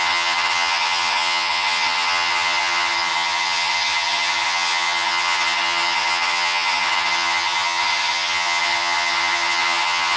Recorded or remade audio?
remade